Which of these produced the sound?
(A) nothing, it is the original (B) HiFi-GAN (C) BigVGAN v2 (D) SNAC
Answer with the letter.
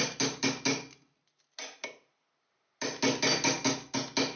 A